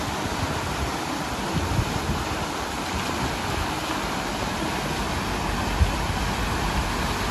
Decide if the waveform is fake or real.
real